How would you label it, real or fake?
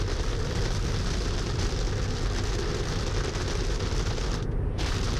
real